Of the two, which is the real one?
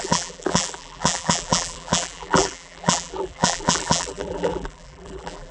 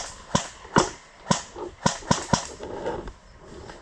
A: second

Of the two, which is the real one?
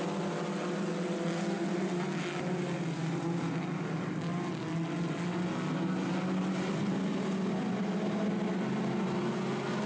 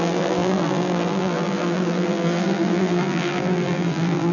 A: first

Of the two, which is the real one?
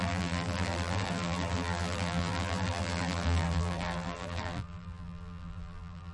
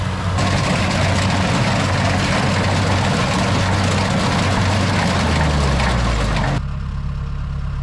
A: second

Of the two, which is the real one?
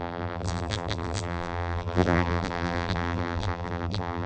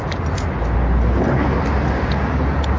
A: second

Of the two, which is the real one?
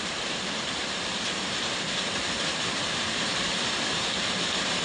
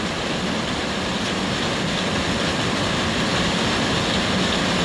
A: second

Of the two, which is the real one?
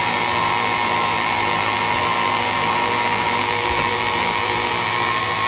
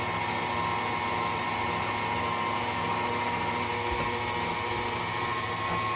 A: second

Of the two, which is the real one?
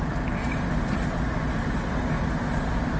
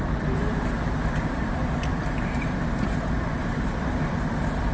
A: first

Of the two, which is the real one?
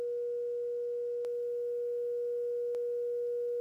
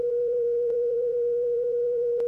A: first